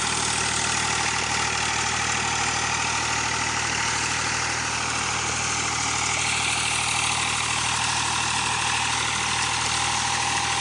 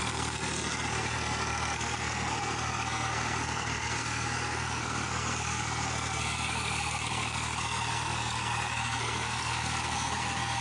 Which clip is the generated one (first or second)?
second